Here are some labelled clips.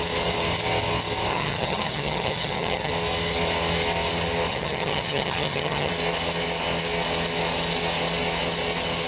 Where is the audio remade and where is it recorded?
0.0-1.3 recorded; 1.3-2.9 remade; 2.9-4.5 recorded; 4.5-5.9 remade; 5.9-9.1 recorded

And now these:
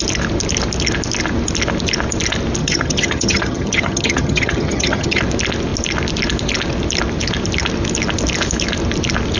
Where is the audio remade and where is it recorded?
0.0-2.6 recorded; 2.6-5.2 remade; 5.2-9.4 recorded

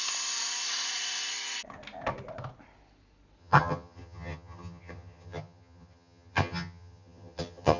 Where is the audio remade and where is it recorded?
0.0-3.4 recorded; 3.4-7.8 remade